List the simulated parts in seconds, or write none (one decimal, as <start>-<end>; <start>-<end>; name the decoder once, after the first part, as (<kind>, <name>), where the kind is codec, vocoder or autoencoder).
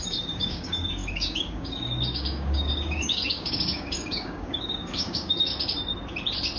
0.0-5.5 (codec, DAC)